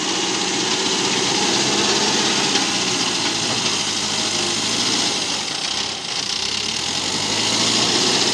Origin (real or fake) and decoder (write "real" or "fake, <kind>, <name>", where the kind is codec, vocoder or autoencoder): real